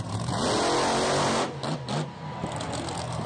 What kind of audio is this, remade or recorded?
recorded